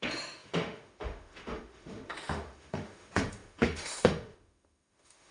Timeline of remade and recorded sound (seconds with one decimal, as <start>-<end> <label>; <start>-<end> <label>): 0.0-5.3 remade